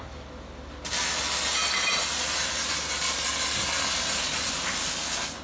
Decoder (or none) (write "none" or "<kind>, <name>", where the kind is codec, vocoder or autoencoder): none